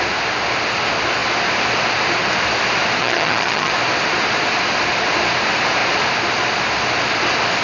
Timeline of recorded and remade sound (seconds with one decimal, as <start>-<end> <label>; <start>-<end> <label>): 0.0-3.0 recorded; 3.0-3.7 remade; 3.7-7.6 recorded